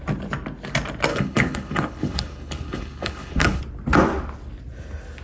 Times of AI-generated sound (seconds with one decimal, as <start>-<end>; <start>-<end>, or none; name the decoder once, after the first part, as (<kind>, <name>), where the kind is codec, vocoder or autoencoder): 1.1-3.6 (codec, HILCodec)